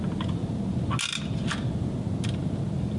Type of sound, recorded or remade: recorded